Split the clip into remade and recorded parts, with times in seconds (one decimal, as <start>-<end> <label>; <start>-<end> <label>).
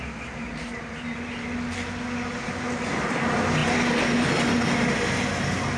0.0-5.8 recorded